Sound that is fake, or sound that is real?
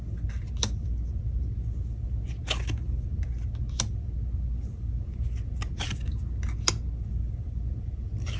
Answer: real